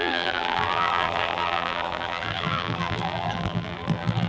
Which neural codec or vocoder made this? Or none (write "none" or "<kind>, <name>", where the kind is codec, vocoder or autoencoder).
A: vocoder, BigVGAN v2